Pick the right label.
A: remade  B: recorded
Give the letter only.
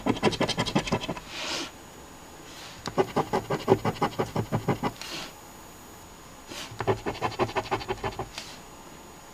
B